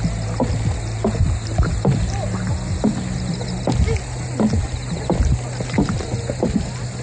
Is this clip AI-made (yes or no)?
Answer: no